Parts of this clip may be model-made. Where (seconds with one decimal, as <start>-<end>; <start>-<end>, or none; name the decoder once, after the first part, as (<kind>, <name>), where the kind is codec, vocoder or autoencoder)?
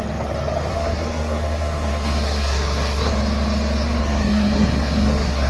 0.7-3.1 (codec, SNAC); 4.0-5.5